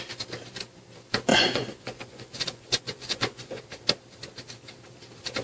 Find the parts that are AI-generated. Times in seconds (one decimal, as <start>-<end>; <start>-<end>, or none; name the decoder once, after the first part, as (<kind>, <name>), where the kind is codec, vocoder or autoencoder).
1.3-3.6 (vocoder, Vocos)